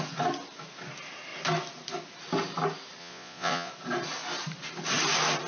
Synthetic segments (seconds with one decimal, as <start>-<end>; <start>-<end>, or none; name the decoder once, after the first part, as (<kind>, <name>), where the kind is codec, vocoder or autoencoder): 3.0-3.7 (vocoder, Vocos)